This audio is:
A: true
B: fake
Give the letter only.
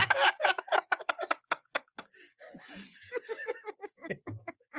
B